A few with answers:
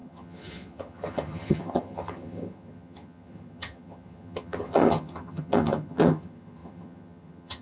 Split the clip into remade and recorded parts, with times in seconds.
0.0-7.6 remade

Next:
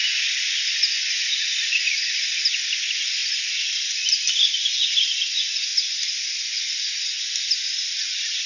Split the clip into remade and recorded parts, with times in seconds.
0.0-8.5 recorded

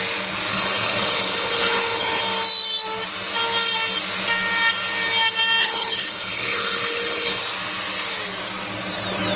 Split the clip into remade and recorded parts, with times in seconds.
0.0-0.5 recorded; 0.5-2.2 remade; 2.2-5.6 recorded; 5.6-7.4 remade; 7.4-9.4 recorded